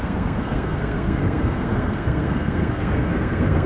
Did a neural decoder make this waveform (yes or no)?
yes